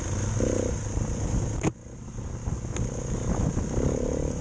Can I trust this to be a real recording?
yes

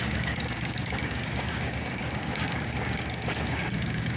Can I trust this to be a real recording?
no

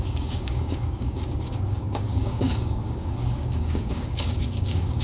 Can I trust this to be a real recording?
no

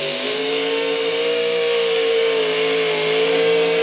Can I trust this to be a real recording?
no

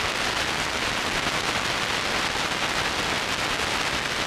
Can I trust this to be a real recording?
yes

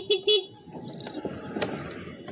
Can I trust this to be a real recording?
yes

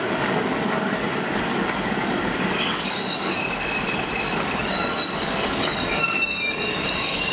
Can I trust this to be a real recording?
no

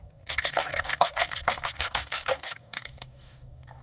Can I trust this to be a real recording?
no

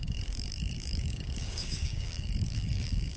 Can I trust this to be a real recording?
no